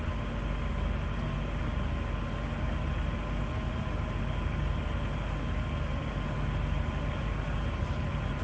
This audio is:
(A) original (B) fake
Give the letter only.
A